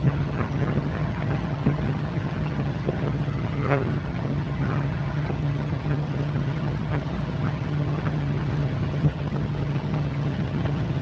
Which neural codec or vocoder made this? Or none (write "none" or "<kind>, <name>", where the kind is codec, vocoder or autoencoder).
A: vocoder, HiFi-GAN